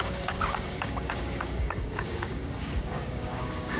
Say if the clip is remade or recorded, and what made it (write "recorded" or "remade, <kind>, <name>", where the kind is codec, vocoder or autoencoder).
remade, codec, DAC